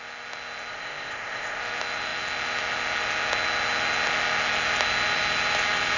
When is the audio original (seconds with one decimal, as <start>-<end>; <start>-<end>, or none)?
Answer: 0.0-0.7; 1.6-6.0